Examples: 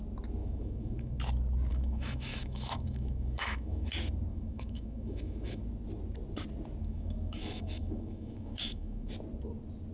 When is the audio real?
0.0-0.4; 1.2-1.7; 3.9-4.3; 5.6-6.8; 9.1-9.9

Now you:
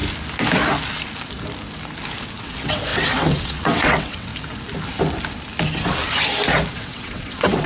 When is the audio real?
0.0-2.4; 4.3-6.7

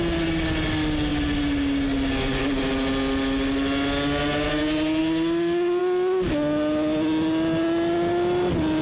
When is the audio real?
0.0-8.8

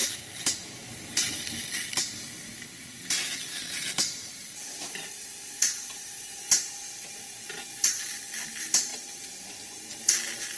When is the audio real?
0.0-10.6

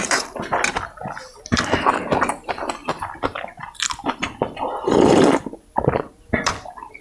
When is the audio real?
0.0-2.8; 5.1-7.0

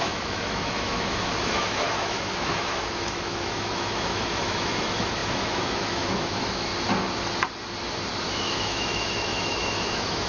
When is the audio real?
6.7-8.3

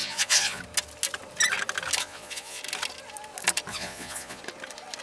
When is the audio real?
0.6-2.0; 2.6-3.7; 4.4-5.0